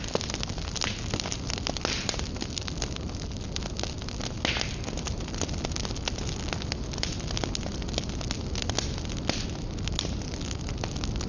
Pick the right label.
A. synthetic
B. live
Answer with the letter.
B